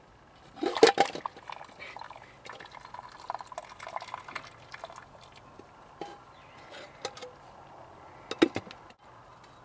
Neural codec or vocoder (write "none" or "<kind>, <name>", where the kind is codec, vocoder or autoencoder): none